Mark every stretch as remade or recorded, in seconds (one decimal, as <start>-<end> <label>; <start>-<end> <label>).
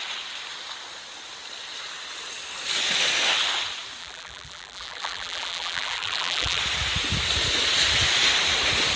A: 0.0-4.0 recorded; 4.0-6.6 remade; 6.6-9.0 recorded